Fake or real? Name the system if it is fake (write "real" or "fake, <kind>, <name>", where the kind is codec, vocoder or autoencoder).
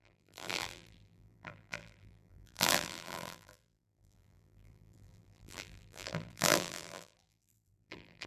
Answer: fake, vocoder, BigVGAN v2